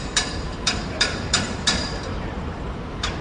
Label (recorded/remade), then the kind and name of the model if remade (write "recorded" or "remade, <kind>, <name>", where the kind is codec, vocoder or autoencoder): remade, vocoder, BigVGAN v2